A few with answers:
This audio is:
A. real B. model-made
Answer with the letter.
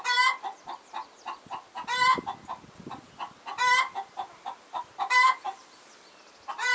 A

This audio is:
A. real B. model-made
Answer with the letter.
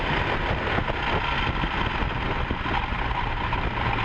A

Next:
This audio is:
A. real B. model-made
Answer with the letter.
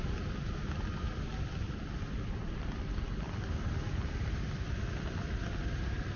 A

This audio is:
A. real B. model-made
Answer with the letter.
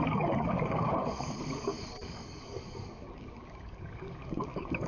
B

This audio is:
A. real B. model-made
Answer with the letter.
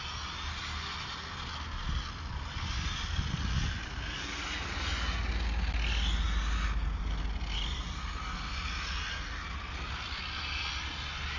A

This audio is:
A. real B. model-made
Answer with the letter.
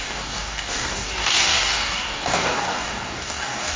B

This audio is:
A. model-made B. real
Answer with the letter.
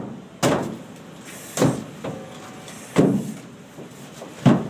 B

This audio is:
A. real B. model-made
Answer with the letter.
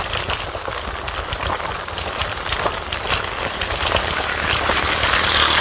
A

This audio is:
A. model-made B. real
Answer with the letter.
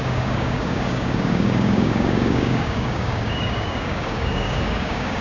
A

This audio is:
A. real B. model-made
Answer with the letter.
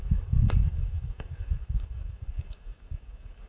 B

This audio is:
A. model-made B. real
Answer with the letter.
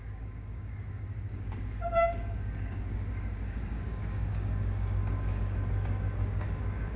A